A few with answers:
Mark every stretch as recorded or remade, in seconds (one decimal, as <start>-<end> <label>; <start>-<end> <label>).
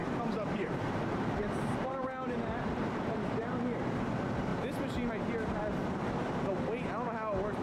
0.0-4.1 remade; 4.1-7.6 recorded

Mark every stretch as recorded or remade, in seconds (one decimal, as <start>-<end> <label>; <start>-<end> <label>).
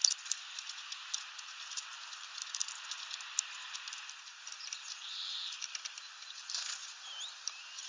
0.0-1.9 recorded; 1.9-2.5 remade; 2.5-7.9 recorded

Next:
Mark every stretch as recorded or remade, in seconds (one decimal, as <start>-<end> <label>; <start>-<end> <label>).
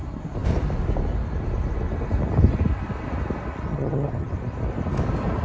0.0-3.7 recorded; 3.7-4.3 remade; 4.3-5.4 recorded